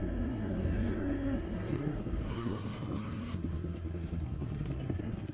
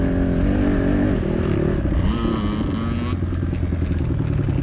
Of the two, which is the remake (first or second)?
first